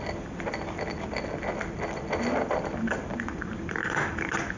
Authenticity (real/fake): real